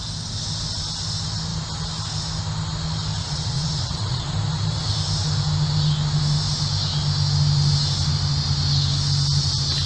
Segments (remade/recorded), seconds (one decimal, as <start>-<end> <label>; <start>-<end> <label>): 0.0-3.2 recorded; 3.2-4.2 remade; 4.2-9.9 recorded